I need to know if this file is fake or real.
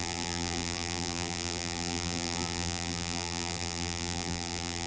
fake